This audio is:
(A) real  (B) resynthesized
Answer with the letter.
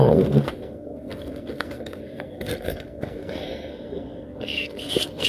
B